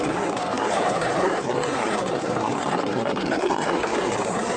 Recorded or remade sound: remade